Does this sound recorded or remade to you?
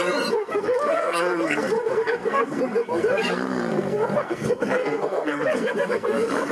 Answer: remade